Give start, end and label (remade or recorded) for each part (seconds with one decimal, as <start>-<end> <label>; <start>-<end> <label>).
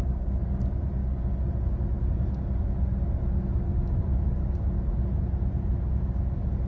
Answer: 0.0-6.7 recorded